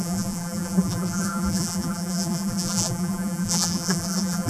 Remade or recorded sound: remade